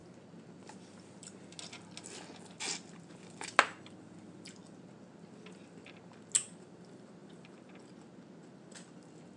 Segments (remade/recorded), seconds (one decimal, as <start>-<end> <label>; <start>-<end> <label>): 0.0-9.4 recorded